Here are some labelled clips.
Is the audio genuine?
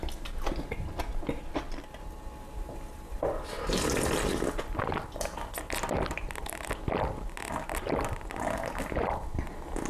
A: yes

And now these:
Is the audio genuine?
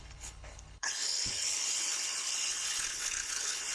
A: no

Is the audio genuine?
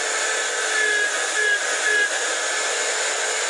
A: yes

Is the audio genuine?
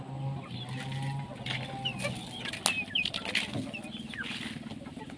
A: yes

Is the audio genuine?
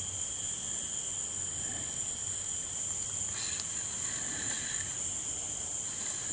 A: yes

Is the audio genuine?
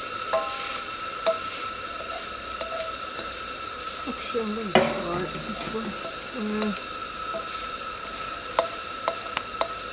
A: yes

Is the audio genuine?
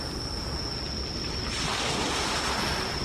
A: yes